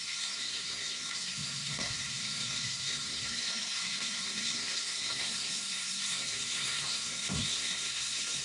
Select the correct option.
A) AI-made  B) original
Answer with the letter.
A